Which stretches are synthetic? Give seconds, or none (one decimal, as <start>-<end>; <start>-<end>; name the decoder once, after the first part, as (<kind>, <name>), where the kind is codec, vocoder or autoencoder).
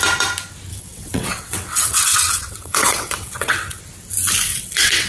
0.7-3.8 (vocoder, WaveNeXt); 4.5-5.1